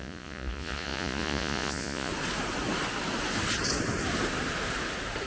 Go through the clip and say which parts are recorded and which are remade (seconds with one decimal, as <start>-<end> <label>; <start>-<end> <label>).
0.0-2.1 remade; 2.1-5.3 recorded